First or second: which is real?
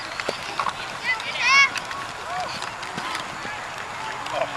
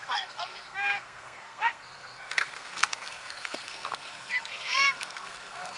first